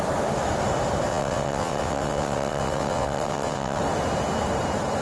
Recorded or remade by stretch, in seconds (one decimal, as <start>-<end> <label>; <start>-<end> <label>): 0.0-1.1 recorded; 1.1-3.8 remade; 3.8-5.0 recorded